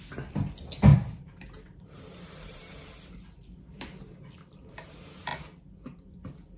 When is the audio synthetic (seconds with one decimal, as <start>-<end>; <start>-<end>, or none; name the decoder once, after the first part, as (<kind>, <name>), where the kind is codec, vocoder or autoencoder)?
0.9-2.7 (vocoder, BigVGAN v2)